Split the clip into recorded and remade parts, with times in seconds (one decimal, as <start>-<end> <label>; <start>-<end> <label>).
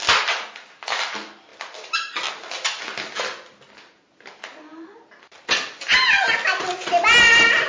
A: 0.0-7.7 recorded